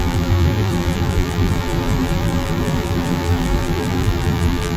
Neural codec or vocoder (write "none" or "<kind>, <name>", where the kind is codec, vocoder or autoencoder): vocoder, BigVGAN v2